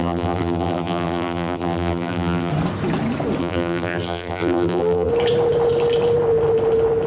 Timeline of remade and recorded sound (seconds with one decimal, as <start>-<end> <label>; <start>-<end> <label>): 0.0-2.5 remade; 2.5-3.4 recorded; 3.4-5.1 remade; 5.1-7.1 recorded